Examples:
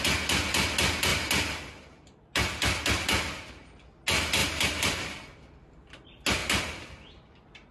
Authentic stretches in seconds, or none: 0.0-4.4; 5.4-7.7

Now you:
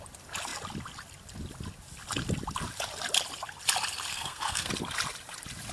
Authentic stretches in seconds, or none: 0.0-4.1; 4.7-5.7

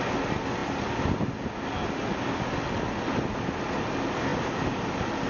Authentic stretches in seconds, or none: 0.0-5.3

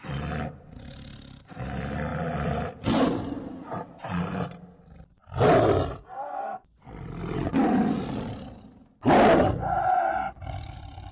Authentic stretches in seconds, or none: 0.0-11.1

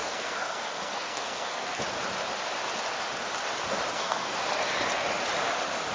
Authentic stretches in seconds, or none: 1.8-3.9; 4.4-5.9

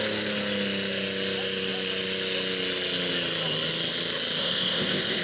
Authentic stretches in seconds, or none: 0.0-4.4